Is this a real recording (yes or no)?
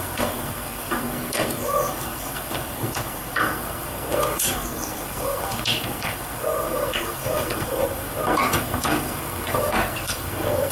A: no